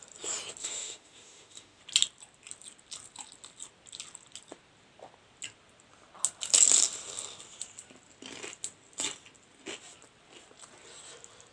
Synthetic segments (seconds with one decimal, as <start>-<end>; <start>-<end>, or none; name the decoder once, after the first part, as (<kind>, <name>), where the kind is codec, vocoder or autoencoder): 0.6-1.8 (autoencoder, DAC-VAE)